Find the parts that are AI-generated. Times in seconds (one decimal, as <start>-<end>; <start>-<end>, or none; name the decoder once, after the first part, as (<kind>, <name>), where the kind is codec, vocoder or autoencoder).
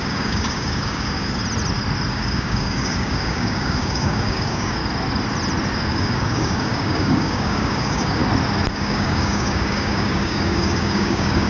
0.0-1.4 (codec, DAC); 2.1-4.8; 5.9-8.2; 8.7-11.5